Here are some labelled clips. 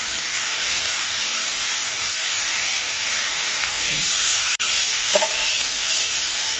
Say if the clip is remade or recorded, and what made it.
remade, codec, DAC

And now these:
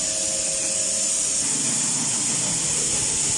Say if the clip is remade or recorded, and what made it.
recorded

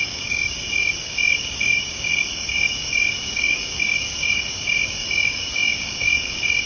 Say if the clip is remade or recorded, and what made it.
remade, codec, DAC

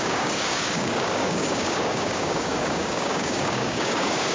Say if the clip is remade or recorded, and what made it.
remade, codec, DAC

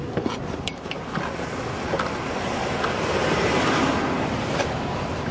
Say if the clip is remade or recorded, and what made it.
recorded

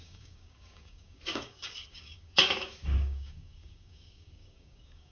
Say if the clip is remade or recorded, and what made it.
remade, codec, DAC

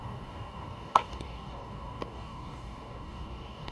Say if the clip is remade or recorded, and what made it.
remade, codec, DAC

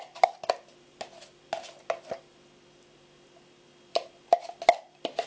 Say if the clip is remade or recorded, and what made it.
recorded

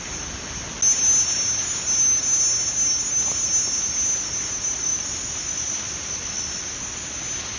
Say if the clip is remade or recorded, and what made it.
recorded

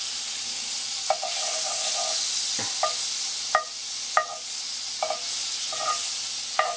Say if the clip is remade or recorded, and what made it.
recorded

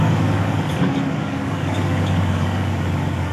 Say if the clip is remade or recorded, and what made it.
remade, codec, DAC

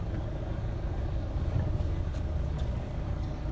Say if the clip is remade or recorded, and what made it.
remade, codec, DAC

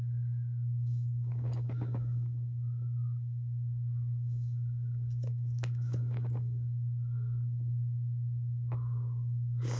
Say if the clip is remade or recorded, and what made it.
remade, codec, DAC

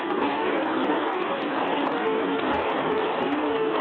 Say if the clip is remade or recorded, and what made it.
remade, codec, DAC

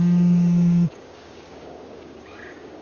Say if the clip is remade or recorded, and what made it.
remade, codec, DAC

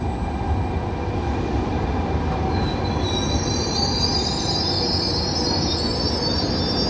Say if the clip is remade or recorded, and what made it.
recorded